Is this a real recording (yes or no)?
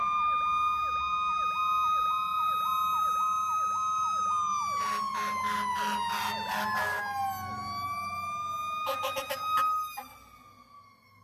yes